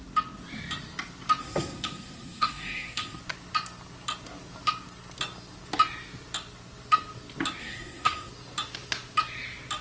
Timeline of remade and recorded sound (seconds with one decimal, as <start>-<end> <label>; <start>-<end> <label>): 0.0-1.4 recorded; 1.4-3.2 remade; 3.2-7.6 recorded; 7.6-8.3 remade; 8.3-9.8 recorded